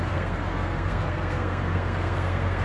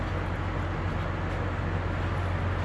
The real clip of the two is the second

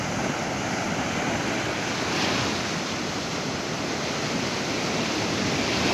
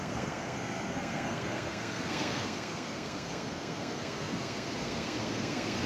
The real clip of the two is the first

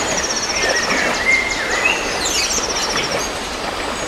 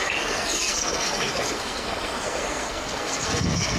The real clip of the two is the first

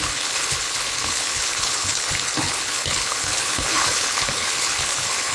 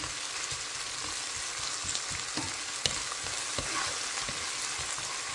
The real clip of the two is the second